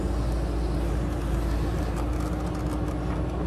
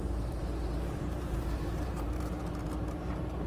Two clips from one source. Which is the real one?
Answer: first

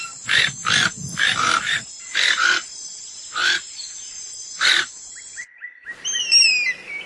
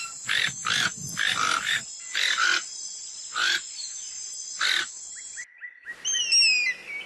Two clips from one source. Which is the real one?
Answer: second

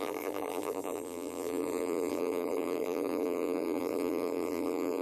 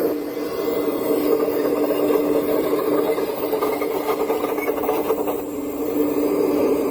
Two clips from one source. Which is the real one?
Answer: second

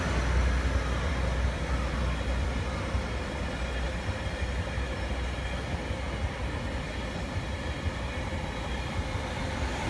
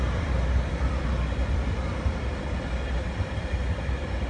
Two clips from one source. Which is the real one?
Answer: first